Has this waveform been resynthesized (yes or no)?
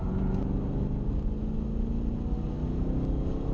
no